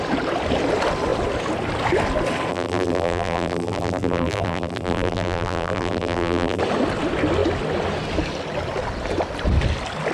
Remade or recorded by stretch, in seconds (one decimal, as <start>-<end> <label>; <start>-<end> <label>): 0.0-2.5 recorded; 2.5-6.6 remade; 6.6-10.1 recorded